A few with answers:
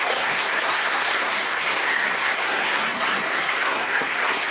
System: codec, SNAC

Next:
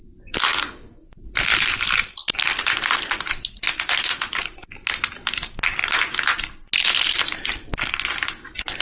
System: none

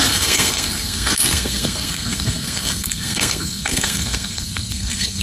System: codec, SNAC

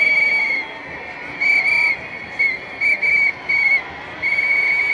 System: none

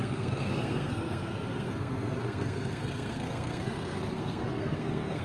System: codec, SNAC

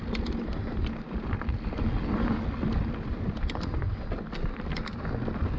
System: none